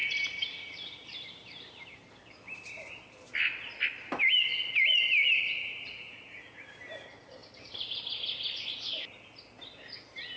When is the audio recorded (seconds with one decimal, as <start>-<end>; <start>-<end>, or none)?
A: 2.1-7.4; 8.0-10.4